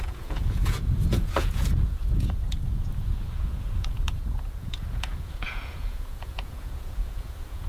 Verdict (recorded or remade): remade